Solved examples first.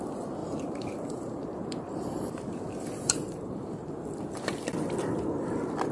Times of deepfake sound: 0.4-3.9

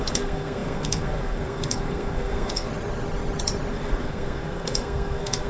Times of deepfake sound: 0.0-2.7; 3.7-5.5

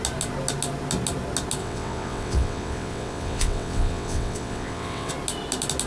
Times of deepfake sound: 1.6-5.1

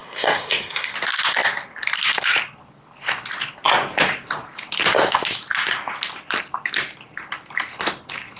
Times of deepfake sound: 0.0-0.9

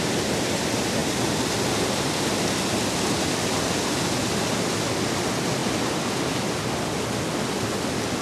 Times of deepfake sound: none